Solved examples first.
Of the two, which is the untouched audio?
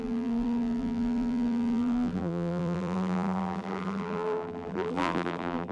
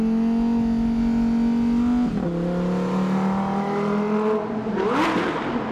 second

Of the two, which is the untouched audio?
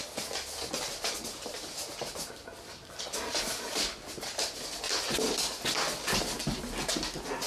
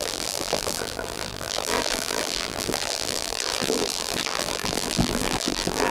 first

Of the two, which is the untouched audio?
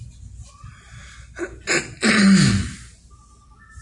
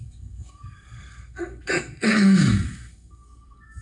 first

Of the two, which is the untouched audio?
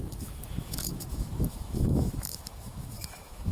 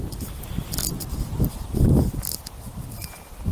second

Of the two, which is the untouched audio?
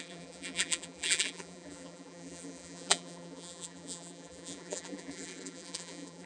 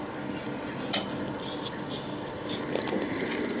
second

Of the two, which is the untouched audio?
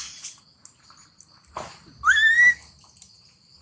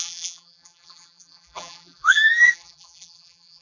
first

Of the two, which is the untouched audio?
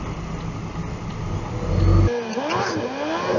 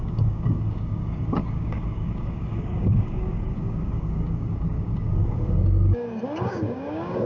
first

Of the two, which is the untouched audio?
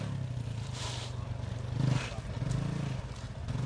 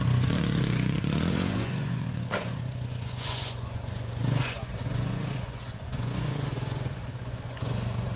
first